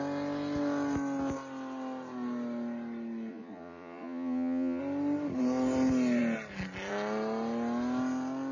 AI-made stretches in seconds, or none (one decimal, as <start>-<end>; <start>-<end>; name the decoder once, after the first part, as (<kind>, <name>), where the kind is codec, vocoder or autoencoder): 3.3-4.8 (vocoder, Vocos)